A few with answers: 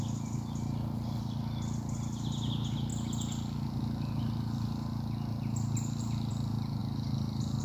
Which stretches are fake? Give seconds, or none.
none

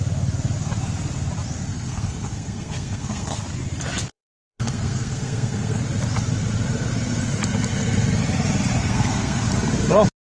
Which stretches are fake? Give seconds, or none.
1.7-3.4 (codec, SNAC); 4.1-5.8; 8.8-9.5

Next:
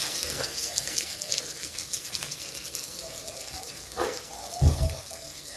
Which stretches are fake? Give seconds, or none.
0.0-5.6 (codec, SNAC)